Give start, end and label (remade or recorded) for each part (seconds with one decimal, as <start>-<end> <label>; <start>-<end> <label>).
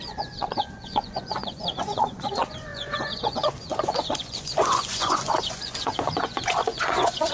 0.0-7.3 remade